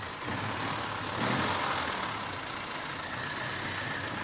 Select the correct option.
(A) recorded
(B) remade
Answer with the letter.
A